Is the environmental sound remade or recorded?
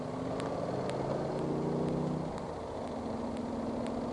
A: recorded